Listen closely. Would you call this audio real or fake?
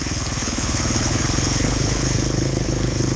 fake